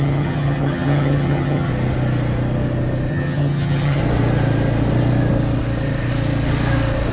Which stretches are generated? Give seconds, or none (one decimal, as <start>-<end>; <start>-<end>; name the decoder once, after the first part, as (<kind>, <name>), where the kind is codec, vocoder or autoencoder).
0.0-1.7 (vocoder, HiFi-GAN); 3.1-4.0